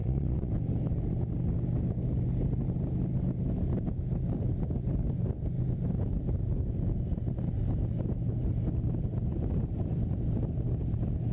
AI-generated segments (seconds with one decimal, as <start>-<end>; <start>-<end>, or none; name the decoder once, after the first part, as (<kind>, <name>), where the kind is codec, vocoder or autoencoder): 0.0-0.5 (vocoder, Vocos)